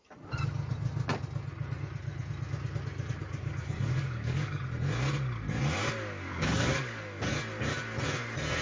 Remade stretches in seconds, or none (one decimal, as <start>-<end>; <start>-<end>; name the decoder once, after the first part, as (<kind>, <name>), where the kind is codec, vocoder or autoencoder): 3.2-4.6 (codec, DAC); 6.3-7.3